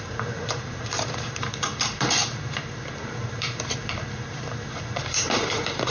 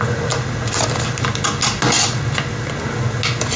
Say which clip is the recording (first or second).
second